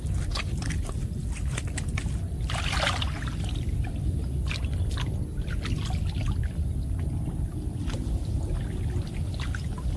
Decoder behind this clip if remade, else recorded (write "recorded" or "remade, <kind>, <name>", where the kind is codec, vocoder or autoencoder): recorded